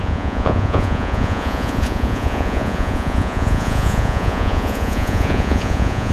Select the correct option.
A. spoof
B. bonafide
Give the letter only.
A